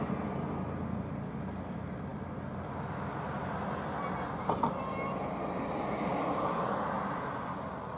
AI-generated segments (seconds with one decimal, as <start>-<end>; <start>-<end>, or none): none